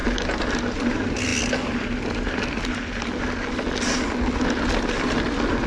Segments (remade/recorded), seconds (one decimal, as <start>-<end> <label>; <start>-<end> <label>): 0.0-5.7 recorded